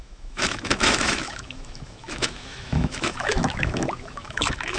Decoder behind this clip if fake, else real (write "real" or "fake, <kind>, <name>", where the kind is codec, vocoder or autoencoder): fake, autoencoder, DAC-VAE